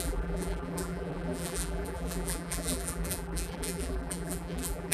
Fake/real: fake